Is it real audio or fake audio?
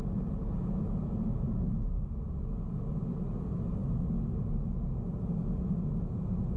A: real